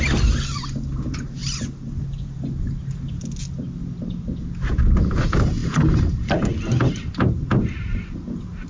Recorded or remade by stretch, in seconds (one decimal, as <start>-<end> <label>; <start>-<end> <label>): 0.0-8.7 recorded